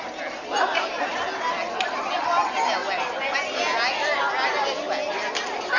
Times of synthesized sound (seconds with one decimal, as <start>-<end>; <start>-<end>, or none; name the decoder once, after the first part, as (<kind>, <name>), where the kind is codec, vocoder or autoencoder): none